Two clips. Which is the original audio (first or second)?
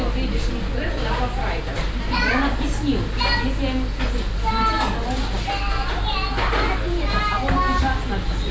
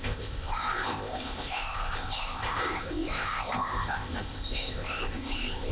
first